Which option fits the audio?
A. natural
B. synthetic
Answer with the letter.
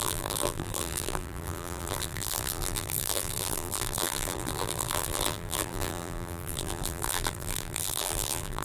B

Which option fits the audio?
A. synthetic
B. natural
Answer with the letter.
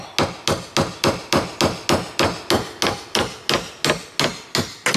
B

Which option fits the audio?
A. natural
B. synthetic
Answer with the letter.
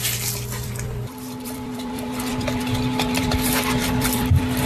B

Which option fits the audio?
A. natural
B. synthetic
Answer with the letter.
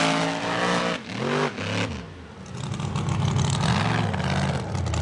A